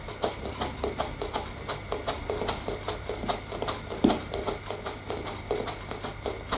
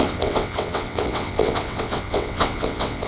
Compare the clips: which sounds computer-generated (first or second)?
second